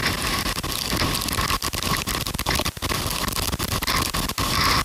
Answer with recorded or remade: recorded